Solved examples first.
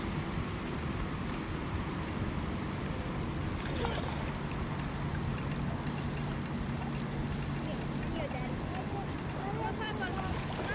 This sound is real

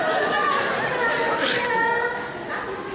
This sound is real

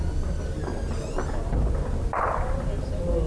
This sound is real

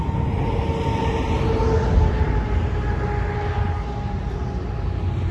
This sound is real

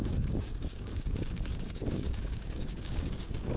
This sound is fake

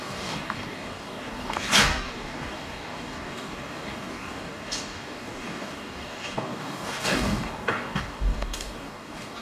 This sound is fake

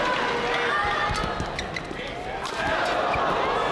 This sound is real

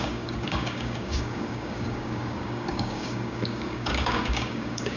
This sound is fake